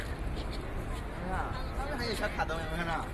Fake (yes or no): no